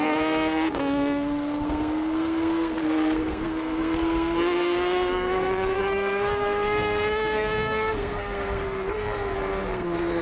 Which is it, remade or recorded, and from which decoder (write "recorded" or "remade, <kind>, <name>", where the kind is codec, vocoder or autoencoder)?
remade, codec, SNAC